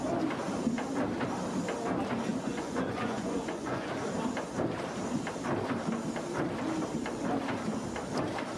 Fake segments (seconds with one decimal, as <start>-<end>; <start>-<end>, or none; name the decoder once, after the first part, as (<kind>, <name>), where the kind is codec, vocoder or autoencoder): 2.3-3.9 (vocoder, Vocos)